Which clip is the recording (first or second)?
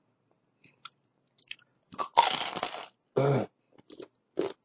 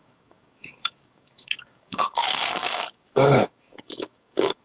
first